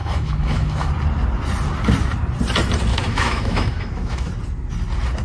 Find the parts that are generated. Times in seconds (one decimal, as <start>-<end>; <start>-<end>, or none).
0.0-0.9; 2.9-4.3